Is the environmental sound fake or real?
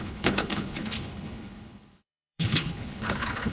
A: fake